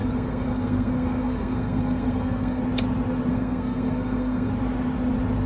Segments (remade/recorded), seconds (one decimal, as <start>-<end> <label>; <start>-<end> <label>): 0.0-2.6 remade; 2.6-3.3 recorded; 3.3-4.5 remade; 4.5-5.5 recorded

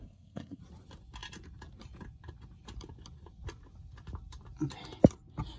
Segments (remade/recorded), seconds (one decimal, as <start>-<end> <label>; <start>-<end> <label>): 0.0-0.6 remade; 0.6-5.6 recorded

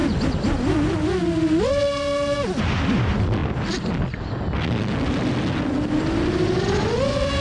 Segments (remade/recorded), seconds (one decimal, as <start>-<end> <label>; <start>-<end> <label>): 0.0-7.4 recorded

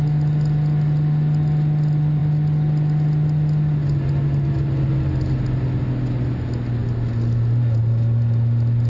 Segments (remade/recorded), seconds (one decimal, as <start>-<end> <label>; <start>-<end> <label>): 0.0-8.9 recorded